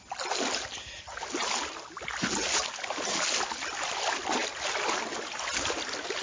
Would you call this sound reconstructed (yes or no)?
no